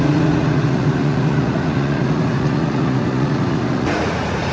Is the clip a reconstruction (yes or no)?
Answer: yes